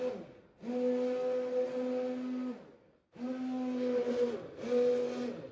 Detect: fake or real real